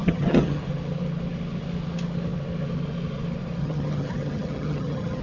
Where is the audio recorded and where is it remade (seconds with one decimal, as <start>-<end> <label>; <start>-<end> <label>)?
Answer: 0.0-0.6 remade; 0.6-3.6 recorded; 3.6-5.2 remade